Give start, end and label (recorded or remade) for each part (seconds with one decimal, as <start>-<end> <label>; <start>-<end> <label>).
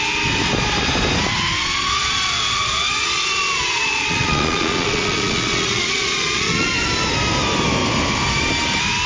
0.0-1.6 recorded; 1.6-6.7 remade; 6.7-9.1 recorded